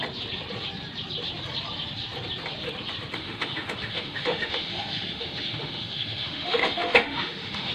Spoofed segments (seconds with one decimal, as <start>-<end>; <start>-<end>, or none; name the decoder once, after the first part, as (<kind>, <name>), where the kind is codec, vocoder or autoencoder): 3.2-7.7 (autoencoder, DAC-VAE)

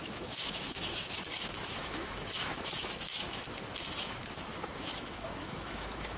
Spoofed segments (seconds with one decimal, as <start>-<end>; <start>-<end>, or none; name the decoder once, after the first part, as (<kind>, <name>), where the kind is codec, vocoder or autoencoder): 0.0-6.2 (autoencoder, DAC-VAE)

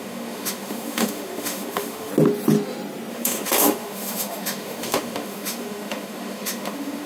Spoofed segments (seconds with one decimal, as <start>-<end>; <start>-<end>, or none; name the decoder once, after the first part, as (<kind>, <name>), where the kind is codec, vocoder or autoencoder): 0.0-2.1 (autoencoder, DAC-VAE); 3.1-7.1

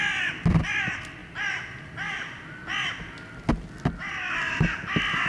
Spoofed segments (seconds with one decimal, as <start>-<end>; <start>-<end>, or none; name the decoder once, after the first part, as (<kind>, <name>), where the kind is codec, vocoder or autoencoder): none